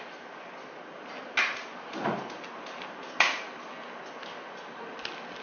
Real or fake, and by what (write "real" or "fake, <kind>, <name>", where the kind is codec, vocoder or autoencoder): real